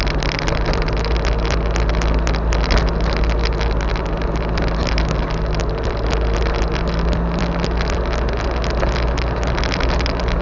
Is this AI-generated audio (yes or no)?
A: no